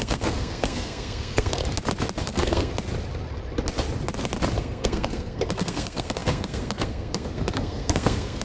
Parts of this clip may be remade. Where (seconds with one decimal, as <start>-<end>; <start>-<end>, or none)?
0.0-1.6; 2.2-2.7; 4.6-8.4